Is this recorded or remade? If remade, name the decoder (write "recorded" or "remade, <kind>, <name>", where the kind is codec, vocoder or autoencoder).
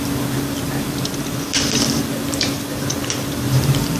remade, vocoder, BigVGAN v2